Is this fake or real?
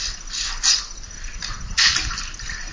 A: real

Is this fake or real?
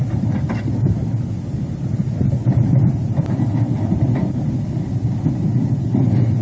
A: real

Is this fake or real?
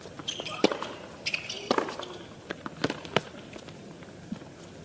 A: real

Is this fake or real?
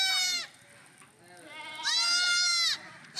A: real